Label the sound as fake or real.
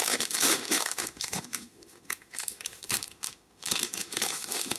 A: fake